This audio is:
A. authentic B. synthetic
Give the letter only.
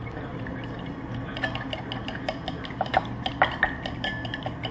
A